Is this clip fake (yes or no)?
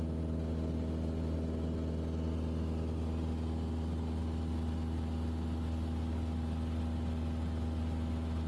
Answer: no